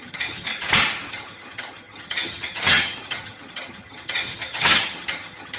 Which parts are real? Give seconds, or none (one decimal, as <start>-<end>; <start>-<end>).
0.5-1.1